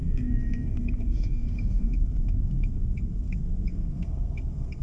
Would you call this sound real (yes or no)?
no